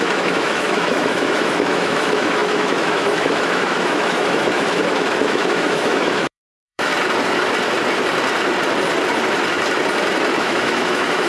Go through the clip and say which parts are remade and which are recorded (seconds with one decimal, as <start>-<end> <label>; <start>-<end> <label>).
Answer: 0.0-6.9 remade; 6.9-10.4 recorded; 10.4-11.3 remade